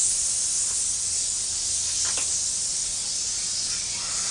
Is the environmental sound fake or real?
real